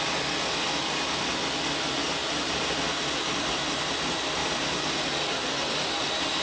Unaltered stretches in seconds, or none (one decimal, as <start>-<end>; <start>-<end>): 0.0-2.0; 3.2-4.4; 5.0-6.4